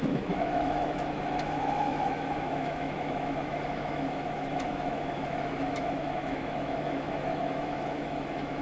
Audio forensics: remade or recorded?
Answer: remade